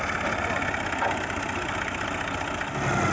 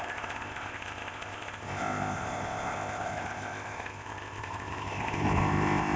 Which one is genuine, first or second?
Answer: first